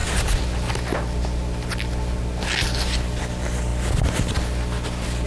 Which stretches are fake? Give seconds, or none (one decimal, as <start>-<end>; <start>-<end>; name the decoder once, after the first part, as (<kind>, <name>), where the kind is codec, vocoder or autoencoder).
none

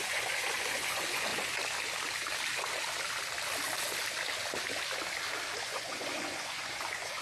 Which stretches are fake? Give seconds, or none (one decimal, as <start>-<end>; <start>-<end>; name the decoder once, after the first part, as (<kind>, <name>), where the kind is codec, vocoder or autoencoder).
0.0-1.3 (vocoder, Vocos); 5.6-7.2

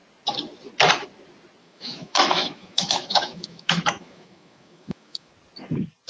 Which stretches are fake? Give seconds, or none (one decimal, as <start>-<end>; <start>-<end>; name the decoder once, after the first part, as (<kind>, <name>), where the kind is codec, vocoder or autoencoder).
1.6-5.3 (autoencoder, DAC-VAE)

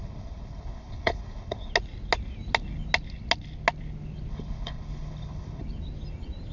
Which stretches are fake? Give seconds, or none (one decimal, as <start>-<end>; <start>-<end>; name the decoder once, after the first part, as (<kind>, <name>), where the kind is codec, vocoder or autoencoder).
0.0-1.7 (codec, HILCodec); 4.3-5.6

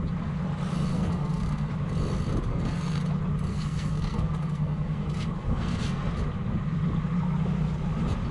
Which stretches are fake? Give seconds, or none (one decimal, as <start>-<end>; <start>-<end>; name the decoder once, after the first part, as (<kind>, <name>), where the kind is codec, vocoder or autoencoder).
0.9-1.7 (codec, SNAC); 2.5-3.0; 3.5-6.1

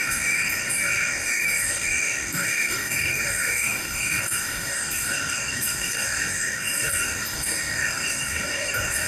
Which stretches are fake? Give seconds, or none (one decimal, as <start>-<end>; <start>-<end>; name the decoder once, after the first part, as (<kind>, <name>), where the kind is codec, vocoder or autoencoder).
0.0-9.1 (codec, DAC)